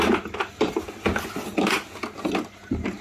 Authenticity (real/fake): real